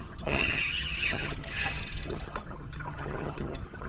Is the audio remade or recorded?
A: remade